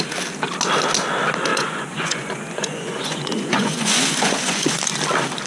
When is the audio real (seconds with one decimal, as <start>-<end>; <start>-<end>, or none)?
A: 0.0-1.5; 4.8-5.5